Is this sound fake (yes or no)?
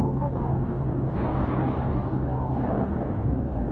yes